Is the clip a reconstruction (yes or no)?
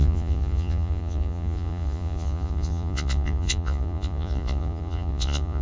yes